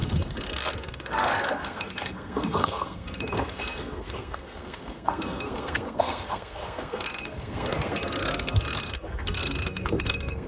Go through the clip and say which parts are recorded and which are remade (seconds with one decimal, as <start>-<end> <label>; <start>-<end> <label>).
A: 0.0-10.5 remade